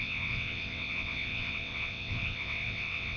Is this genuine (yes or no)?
no